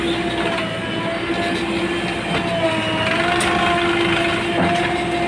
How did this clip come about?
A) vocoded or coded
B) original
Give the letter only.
B